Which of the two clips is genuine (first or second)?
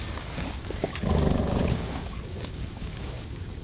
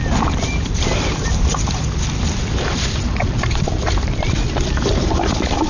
second